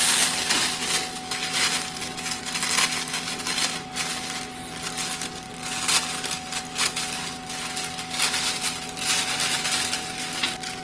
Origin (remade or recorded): recorded